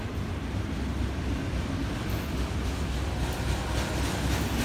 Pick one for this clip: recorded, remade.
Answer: recorded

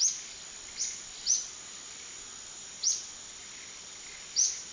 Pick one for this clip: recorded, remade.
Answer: recorded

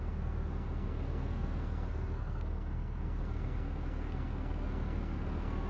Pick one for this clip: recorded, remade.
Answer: remade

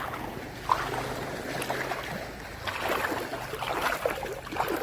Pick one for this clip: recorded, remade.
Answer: recorded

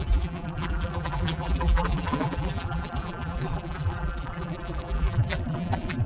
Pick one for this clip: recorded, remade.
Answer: remade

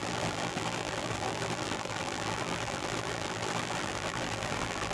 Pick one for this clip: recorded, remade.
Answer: remade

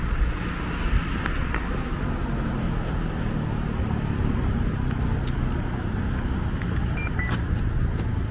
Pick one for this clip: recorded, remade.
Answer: recorded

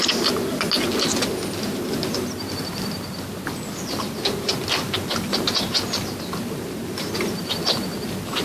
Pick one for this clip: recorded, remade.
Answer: recorded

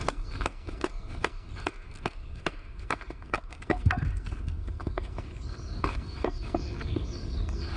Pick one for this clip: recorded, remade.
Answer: remade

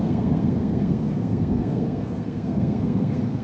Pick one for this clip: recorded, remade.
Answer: remade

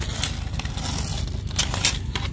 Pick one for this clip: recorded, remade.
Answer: recorded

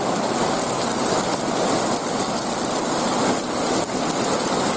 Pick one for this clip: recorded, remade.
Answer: recorded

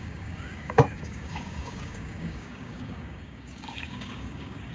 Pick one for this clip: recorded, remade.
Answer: remade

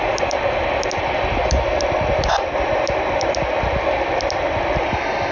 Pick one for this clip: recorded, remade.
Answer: recorded